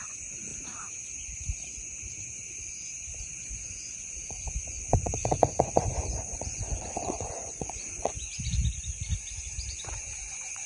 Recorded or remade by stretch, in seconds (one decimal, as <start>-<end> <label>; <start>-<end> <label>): 0.0-0.5 remade; 0.5-3.2 recorded; 3.2-8.6 remade; 8.6-9.9 recorded; 9.9-10.7 remade